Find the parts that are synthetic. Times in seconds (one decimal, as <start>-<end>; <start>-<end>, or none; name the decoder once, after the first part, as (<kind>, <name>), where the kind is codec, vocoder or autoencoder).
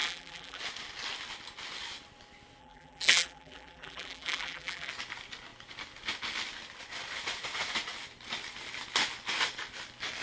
0.0-0.6 (vocoder, BigVGAN v2); 2.6-4.9